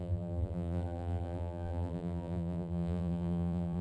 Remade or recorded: remade